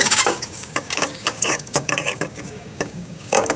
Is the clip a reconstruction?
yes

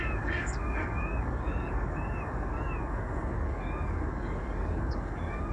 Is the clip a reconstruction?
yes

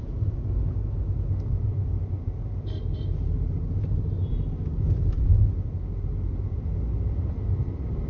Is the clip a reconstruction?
no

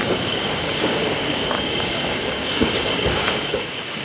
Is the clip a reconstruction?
yes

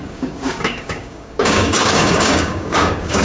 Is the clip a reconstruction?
yes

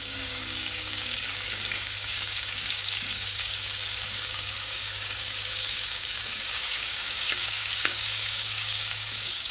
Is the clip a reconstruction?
yes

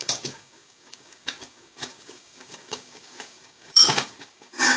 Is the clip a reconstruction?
yes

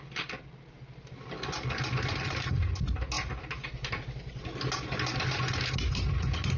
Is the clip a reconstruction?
no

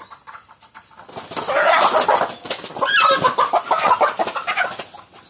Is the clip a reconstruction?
no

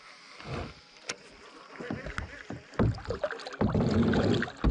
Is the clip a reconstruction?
no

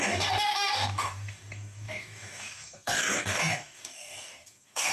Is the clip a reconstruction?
yes